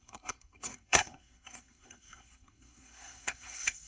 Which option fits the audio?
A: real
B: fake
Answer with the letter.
B